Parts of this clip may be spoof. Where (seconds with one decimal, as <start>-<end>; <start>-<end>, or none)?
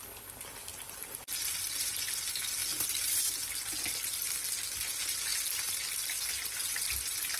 2.6-4.0